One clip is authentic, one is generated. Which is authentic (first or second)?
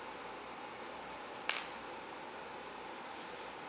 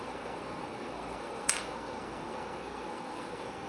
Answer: first